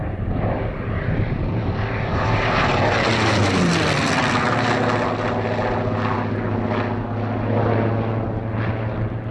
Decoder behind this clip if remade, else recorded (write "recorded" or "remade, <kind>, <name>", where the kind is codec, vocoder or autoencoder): recorded